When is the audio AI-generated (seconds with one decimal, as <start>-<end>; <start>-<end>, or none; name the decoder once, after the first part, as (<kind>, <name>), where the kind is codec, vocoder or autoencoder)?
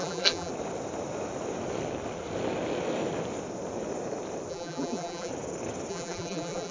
0.0-0.5 (vocoder, BigVGAN v2); 4.5-5.3; 5.9-6.7